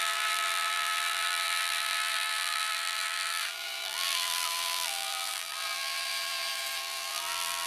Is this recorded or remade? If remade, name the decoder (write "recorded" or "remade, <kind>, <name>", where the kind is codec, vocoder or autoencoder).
remade, vocoder, BigVGAN v2